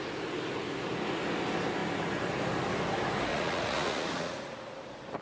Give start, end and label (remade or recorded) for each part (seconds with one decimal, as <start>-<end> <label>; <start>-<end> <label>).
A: 0.0-3.3 recorded; 3.3-4.7 remade; 4.7-5.2 recorded